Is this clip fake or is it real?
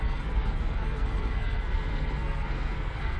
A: fake